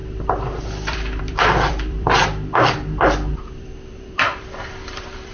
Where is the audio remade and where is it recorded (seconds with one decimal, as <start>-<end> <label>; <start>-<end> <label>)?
0.0-2.2 remade; 2.2-3.3 recorded; 3.3-5.3 remade

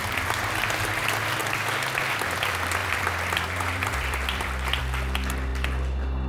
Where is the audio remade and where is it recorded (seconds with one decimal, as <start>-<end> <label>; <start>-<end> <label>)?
0.0-2.8 recorded; 2.8-4.8 remade; 4.8-6.3 recorded

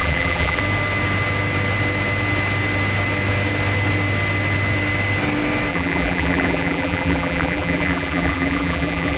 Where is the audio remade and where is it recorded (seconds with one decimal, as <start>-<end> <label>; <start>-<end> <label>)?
0.0-0.6 remade; 0.6-5.7 recorded; 5.7-9.2 remade

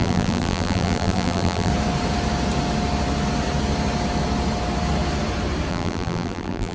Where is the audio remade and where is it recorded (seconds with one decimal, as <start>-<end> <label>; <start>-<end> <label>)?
0.0-1.7 remade; 1.7-5.7 recorded; 5.7-6.7 remade

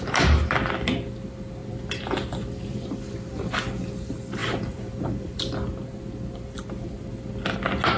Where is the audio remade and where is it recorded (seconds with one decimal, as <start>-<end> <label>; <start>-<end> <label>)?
0.0-1.6 recorded; 1.6-2.8 remade; 2.8-4.4 recorded; 4.4-5.4 remade; 5.4-8.0 recorded